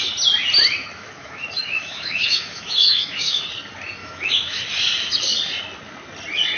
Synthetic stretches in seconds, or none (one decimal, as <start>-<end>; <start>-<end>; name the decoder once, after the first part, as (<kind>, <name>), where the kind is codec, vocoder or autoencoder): 0.8-3.4 (autoencoder, DAC-VAE); 4.0-4.6